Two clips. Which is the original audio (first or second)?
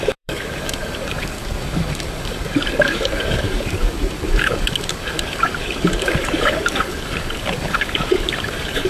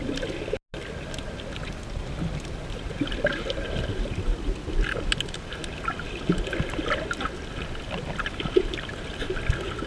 second